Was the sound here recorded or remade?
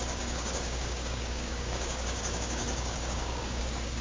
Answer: remade